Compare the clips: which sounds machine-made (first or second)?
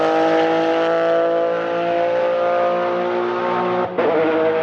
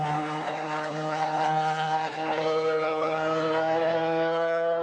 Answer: second